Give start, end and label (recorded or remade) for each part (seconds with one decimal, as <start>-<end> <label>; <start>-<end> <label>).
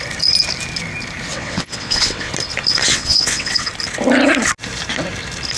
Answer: 0.0-1.3 recorded; 1.3-2.3 remade; 2.3-2.9 recorded; 2.9-3.7 remade; 3.7-5.6 recorded